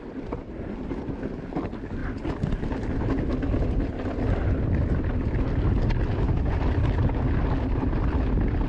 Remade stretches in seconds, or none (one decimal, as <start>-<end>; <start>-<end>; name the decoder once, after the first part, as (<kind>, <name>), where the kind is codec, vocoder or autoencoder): none